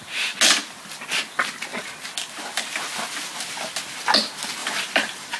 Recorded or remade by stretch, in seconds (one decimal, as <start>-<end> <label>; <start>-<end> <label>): 0.0-4.6 recorded; 4.6-5.4 remade